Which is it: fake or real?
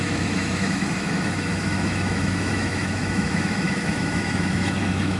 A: fake